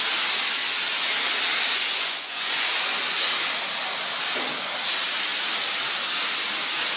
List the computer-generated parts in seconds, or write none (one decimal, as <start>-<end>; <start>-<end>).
1.7-3.0